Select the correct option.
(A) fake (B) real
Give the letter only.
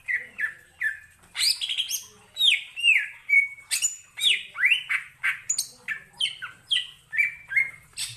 B